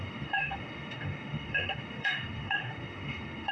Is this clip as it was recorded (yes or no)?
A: no